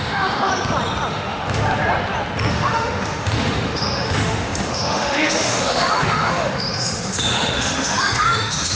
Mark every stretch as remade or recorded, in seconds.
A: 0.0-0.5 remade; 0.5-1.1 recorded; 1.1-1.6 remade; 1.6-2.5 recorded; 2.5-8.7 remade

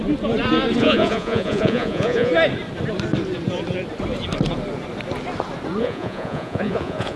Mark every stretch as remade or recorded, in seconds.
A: 0.0-0.8 recorded; 0.8-2.3 remade; 2.3-5.8 recorded; 5.8-7.2 remade

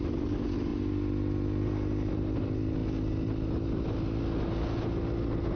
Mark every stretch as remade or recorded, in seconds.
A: 0.0-5.6 recorded

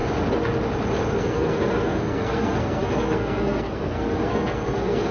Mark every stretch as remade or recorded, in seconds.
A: 0.0-1.2 recorded; 1.2-5.1 remade

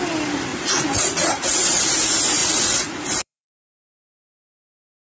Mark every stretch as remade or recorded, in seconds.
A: 0.0-0.5 recorded; 0.5-1.8 remade; 1.8-2.4 recorded; 2.4-4.3 remade; 4.3-5.2 recorded